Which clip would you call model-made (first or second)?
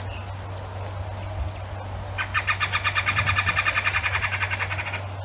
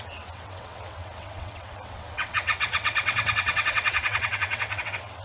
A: second